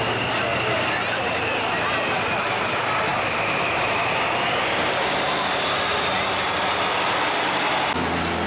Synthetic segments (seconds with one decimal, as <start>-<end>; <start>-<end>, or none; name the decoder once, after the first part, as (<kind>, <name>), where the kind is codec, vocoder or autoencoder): none